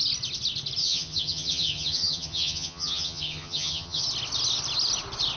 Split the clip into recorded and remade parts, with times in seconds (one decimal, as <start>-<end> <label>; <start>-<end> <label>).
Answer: 0.0-0.8 recorded; 0.8-4.0 remade; 4.0-5.4 recorded